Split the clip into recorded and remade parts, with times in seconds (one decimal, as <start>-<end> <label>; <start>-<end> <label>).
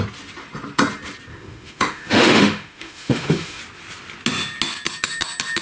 0.0-1.3 recorded; 1.3-3.6 remade; 3.6-5.6 recorded